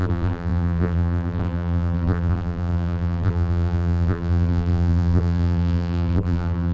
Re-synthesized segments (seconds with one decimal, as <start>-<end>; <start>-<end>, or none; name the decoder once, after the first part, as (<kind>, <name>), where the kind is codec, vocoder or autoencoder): 0.0-6.7 (vocoder, BigVGAN v2)